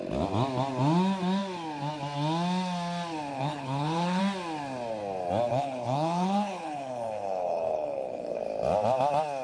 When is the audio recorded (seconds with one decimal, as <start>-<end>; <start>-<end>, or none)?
0.0-3.3; 4.2-5.5; 8.4-9.4